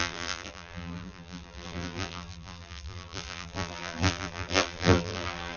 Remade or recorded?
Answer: remade